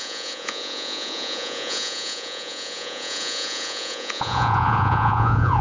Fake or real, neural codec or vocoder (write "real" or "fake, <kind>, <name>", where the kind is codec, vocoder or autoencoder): fake, vocoder, Vocos